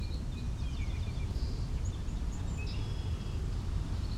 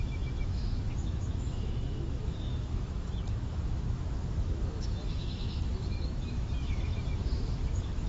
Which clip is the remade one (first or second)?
second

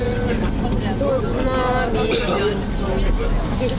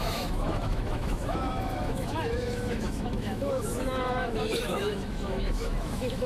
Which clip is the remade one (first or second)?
second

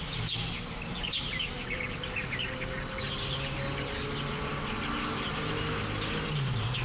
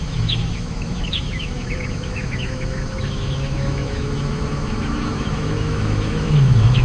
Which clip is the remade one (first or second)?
second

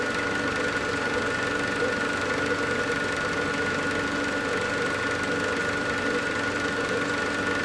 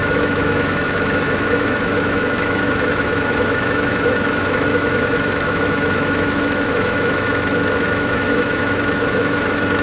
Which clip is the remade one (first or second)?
second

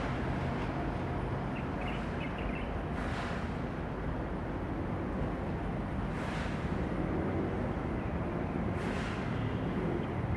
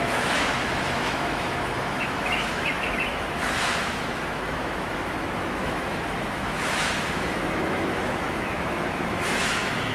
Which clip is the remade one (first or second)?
second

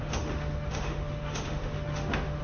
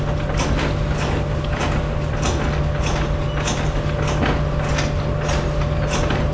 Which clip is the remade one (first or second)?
first